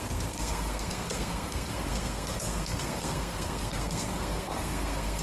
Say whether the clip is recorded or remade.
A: remade